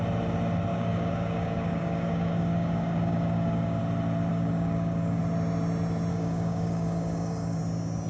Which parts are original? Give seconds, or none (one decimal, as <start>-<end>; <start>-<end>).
0.0-0.7; 3.8-4.3; 5.2-6.1; 7.6-8.1